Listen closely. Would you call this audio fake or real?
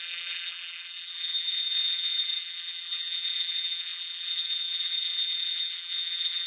fake